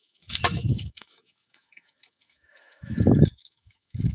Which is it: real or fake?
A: fake